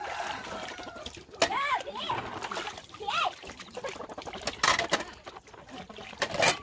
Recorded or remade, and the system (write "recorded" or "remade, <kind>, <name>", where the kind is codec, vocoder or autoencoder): recorded